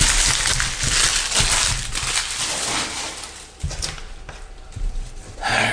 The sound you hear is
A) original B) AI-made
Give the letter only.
A